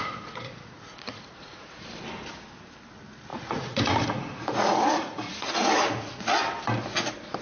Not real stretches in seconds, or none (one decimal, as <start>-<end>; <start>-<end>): 0.0-1.9; 3.3-6.3